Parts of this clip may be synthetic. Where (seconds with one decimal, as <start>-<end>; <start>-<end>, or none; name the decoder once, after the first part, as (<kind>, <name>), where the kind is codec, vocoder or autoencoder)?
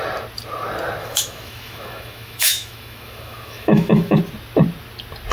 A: 1.0-4.2 (autoencoder, DAC-VAE)